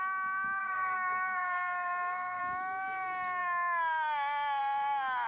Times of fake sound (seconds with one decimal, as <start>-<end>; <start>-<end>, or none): 0.6-2.4